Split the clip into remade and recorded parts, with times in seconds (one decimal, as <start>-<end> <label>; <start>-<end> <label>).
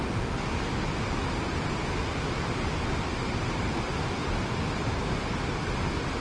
0.0-6.2 recorded